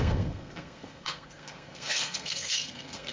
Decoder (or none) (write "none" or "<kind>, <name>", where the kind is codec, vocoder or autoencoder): codec, SNAC